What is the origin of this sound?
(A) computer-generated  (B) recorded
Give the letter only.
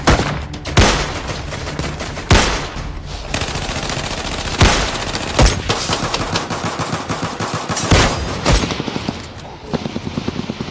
B